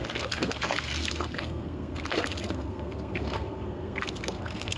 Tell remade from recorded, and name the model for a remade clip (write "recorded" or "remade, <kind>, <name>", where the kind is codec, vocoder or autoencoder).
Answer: remade, codec, SNAC